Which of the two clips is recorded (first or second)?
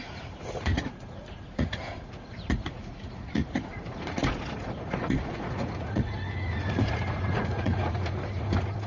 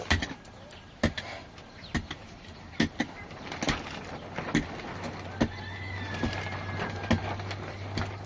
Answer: second